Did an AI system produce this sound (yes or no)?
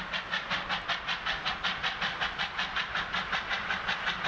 no